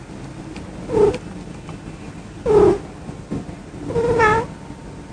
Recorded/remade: recorded